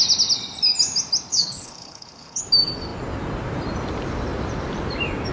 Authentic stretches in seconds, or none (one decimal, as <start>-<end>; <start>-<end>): 0.0-1.3; 2.4-5.3